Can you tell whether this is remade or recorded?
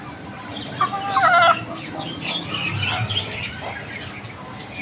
recorded